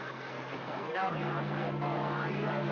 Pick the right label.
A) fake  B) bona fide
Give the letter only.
A